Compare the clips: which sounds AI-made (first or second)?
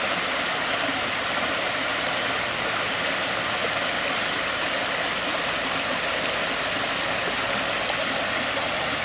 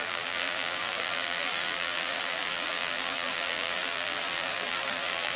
second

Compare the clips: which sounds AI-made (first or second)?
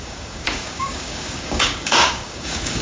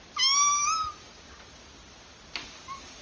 first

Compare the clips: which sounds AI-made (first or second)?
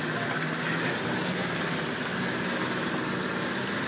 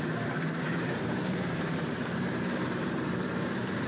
second